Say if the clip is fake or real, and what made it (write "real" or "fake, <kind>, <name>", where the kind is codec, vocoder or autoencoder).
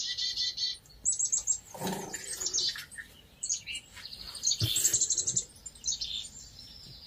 real